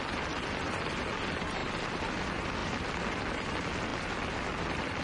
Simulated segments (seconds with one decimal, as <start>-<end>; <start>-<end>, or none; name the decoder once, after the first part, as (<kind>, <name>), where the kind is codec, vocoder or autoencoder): none